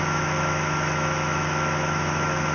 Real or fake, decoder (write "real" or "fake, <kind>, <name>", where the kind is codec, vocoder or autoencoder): fake, autoencoder, DAC-VAE